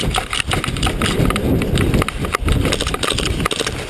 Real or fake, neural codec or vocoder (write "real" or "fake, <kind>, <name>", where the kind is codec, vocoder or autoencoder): real